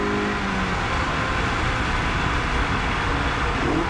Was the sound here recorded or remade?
recorded